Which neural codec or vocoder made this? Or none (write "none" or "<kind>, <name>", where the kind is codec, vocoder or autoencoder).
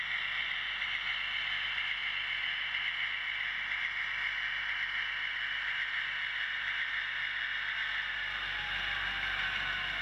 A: none